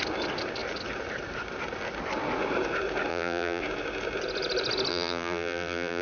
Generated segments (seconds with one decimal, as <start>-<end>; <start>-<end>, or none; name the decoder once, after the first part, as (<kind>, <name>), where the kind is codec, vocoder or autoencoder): 3.1-3.6 (vocoder, BigVGAN v2); 4.9-6.0